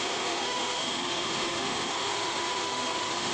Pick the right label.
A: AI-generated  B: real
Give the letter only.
A